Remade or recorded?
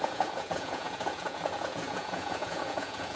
remade